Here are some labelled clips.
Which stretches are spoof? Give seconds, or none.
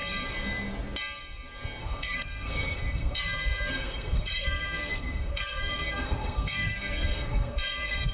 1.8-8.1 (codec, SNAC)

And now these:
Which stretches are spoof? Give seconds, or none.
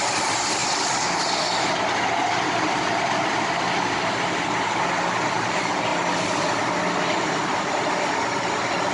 none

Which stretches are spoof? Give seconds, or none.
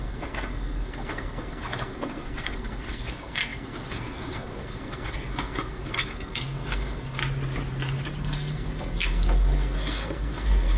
0.0-7.2 (codec, SNAC); 8.2-10.8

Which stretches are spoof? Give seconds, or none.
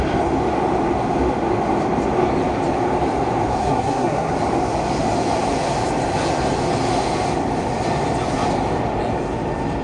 3.6-4.3 (codec, SNAC)